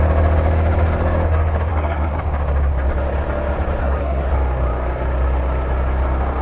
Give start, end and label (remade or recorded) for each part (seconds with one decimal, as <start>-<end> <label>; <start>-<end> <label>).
0.0-1.7 recorded; 1.7-2.2 remade; 2.2-3.8 recorded; 3.8-4.3 remade; 4.3-6.4 recorded